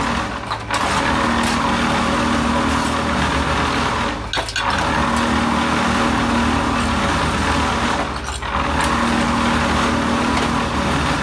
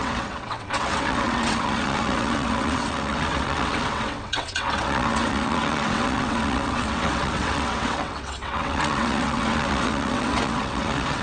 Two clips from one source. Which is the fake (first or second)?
second